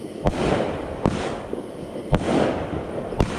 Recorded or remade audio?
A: remade